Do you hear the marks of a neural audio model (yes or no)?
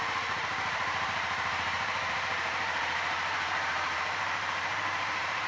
yes